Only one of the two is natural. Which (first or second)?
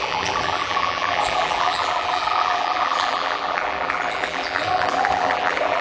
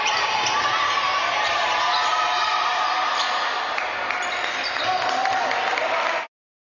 second